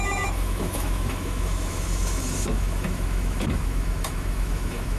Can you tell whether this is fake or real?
fake